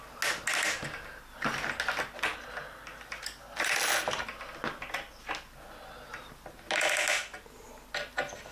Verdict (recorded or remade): recorded